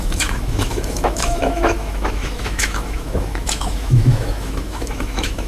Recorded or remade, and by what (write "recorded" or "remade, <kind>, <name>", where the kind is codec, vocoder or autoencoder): remade, autoencoder, DAC-VAE